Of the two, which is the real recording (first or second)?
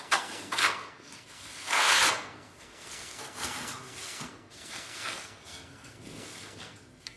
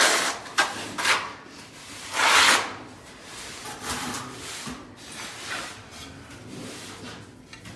second